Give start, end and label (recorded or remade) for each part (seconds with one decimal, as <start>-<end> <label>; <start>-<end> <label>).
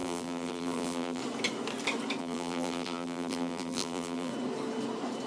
0.0-1.2 remade; 1.2-2.2 recorded; 2.2-4.3 remade; 4.3-5.3 recorded